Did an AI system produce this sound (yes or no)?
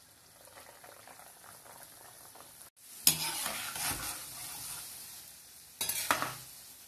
no